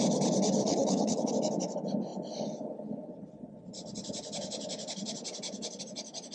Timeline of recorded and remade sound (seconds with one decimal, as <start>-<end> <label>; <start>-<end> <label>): 0.0-0.6 recorded; 0.6-1.3 remade; 1.3-6.3 recorded